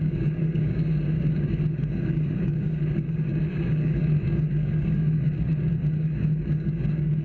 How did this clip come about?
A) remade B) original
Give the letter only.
A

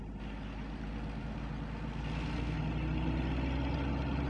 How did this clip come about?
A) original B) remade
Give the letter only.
A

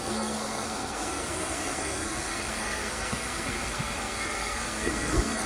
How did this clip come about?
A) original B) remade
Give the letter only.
B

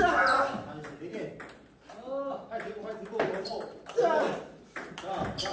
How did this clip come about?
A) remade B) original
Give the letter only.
B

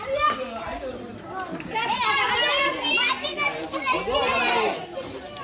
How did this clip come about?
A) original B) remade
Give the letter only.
A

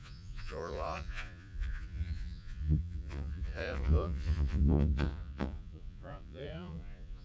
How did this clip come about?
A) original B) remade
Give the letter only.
B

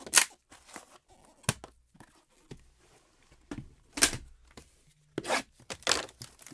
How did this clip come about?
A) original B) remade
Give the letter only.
A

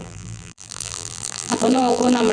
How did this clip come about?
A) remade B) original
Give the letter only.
A